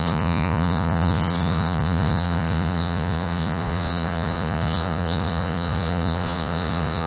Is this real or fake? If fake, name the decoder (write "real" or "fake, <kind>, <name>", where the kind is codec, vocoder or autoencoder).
fake, vocoder, Vocos